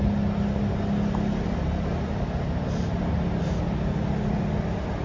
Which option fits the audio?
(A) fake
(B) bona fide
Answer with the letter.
B